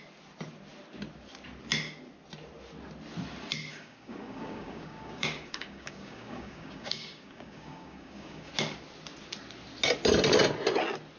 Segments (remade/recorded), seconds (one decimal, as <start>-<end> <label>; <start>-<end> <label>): 0.0-3.7 recorded; 3.7-8.5 remade; 8.5-11.2 recorded